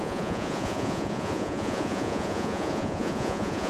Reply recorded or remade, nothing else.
remade